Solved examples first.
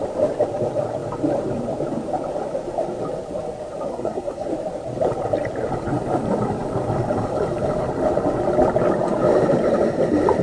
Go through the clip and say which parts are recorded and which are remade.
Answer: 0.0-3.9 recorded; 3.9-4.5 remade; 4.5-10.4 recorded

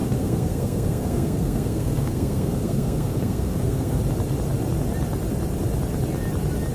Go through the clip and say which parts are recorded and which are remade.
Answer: 0.0-4.0 remade; 4.0-6.7 recorded